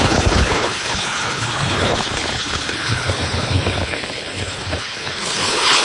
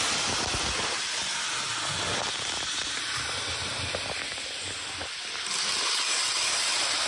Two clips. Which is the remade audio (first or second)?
first